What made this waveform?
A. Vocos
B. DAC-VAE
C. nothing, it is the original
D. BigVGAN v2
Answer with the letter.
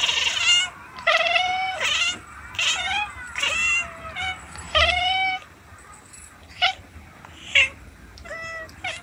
C